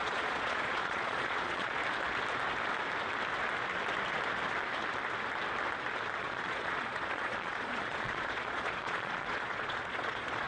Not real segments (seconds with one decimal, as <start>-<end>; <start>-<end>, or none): 0.0-1.8; 6.2-10.5